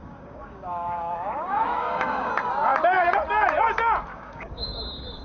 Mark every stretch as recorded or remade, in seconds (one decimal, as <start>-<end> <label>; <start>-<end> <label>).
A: 0.0-2.3 remade; 2.3-4.1 recorded; 4.1-4.8 remade; 4.8-5.2 recorded